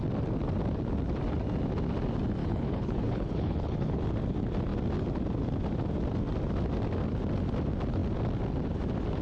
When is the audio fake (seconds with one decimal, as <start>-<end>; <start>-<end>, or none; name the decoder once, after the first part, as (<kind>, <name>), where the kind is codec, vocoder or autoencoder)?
2.4-4.0 (codec, HILCodec)